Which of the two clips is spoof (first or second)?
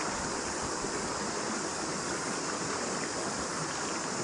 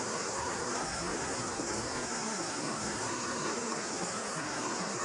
second